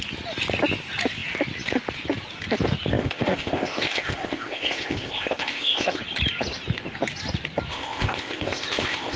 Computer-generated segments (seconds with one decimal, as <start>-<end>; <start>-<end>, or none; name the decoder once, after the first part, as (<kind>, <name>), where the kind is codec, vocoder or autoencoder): 2.9-6.0 (codec, ZipCodec); 7.7-9.2